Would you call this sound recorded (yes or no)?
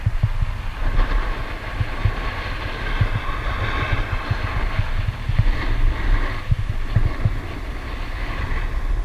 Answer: yes